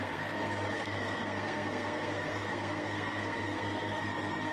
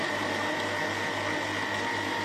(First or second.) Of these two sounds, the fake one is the first